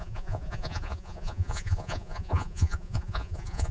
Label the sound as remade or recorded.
remade